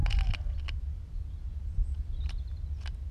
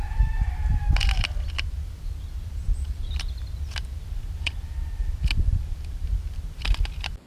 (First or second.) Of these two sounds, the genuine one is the first